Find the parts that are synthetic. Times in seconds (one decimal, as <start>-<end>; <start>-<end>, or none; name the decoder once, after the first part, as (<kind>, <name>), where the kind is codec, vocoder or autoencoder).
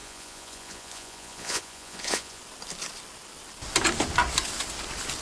0.0-2.4 (vocoder, Vocos)